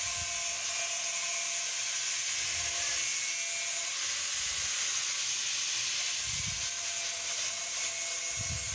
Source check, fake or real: real